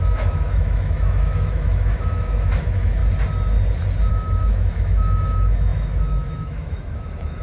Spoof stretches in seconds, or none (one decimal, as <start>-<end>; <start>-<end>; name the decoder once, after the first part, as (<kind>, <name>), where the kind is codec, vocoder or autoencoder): 0.0-3.0 (autoencoder, DAC-VAE); 4.1-7.4